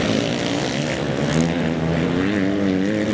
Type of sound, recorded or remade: recorded